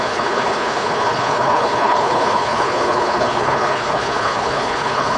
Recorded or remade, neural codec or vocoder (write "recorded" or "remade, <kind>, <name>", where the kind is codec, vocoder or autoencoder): remade, codec, HILCodec